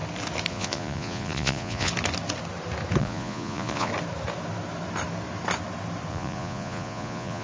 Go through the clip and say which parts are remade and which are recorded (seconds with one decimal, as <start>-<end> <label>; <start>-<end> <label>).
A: 0.0-0.5 recorded; 0.5-1.9 remade; 1.9-3.0 recorded; 3.0-3.9 remade; 3.9-6.1 recorded; 6.1-7.4 remade